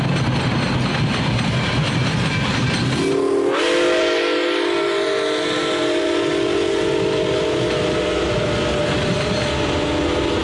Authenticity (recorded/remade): recorded